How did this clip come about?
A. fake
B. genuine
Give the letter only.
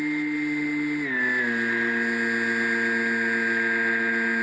B